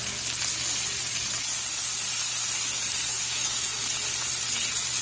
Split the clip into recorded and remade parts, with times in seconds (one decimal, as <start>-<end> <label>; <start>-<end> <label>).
0.0-3.1 recorded; 3.1-3.8 remade; 3.8-5.0 recorded